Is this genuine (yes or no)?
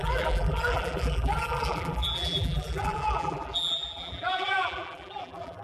no